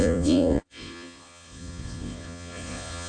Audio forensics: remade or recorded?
remade